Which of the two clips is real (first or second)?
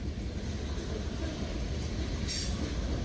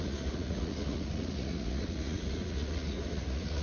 first